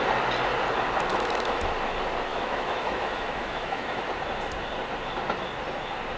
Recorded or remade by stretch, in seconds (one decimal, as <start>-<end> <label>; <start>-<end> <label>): 0.0-1.1 recorded; 1.1-1.6 remade; 1.6-2.3 recorded; 2.3-4.1 remade; 4.1-6.2 recorded